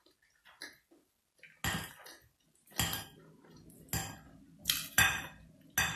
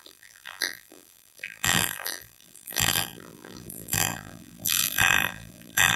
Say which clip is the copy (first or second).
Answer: second